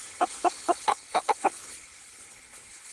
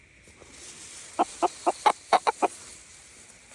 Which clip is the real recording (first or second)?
second